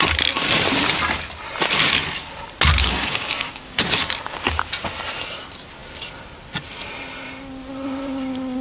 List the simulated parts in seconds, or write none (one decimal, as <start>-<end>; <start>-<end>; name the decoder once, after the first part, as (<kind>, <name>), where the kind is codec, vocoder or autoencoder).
2.8-3.8 (codec, DAC)